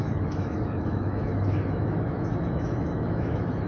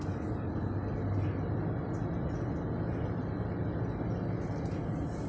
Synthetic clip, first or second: first